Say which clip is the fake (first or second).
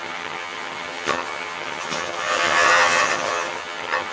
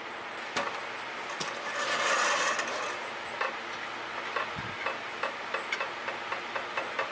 first